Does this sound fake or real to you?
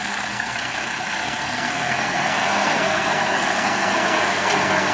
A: fake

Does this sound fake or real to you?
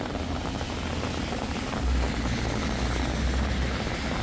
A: real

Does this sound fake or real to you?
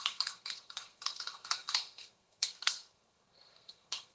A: fake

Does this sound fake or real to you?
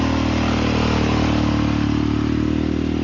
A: real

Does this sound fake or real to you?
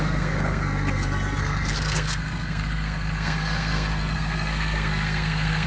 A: fake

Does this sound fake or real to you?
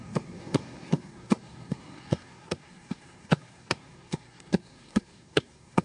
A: fake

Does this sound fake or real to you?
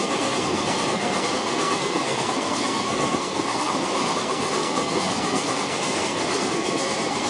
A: fake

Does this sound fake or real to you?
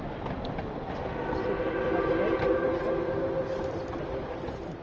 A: real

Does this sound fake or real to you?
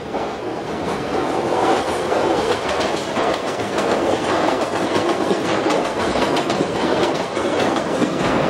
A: fake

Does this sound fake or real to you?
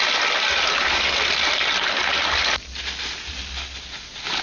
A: real